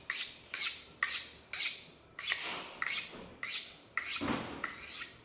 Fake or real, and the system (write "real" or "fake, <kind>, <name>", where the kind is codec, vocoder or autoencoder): real